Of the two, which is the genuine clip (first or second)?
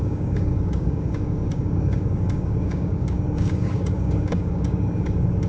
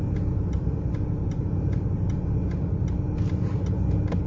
second